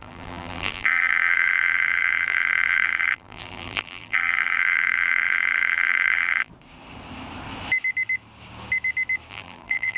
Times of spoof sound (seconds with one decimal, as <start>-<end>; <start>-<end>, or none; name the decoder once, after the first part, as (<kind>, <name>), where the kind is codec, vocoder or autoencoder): 0.0-6.5 (vocoder, BigVGAN v2); 9.3-10.0